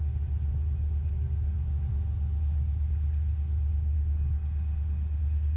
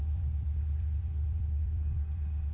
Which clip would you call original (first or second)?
first